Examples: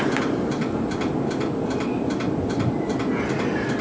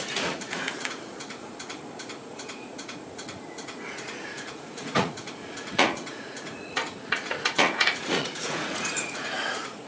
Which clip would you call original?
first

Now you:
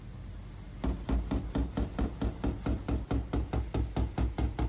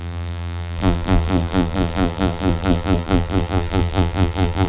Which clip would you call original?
first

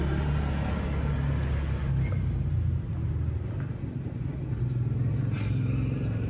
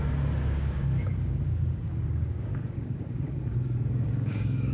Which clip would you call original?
first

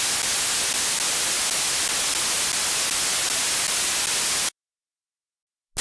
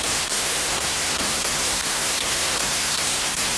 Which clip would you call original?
first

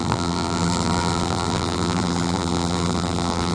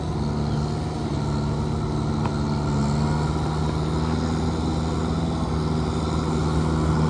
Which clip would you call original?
second